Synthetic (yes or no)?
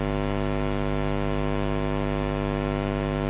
no